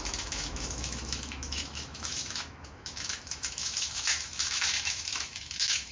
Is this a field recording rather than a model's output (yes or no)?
no